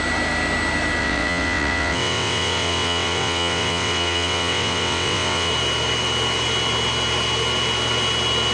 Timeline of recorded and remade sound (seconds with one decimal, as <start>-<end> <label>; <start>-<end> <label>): 0.0-1.0 recorded; 1.0-5.5 remade; 5.5-8.5 recorded